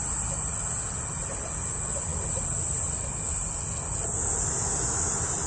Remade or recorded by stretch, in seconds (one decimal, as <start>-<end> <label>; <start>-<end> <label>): 0.0-5.5 recorded